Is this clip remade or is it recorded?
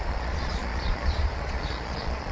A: remade